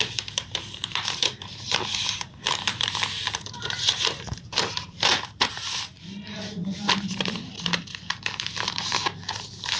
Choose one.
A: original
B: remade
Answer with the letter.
B